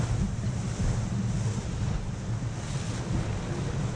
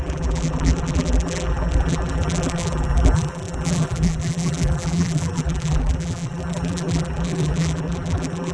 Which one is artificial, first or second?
second